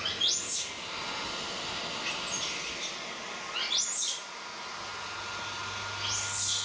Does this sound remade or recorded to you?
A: recorded